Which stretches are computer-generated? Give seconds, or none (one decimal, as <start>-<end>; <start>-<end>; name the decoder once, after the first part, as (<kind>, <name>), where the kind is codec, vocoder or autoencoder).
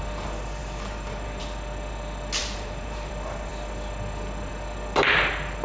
0.6-1.4 (vocoder, BigVGAN v2); 2.4-3.1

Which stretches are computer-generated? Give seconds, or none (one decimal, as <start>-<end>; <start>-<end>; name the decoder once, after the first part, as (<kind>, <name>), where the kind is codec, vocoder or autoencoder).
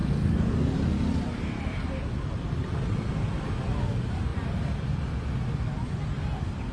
4.3-5.1 (vocoder, BigVGAN v2)